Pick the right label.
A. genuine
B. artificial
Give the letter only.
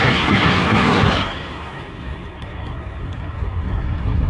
B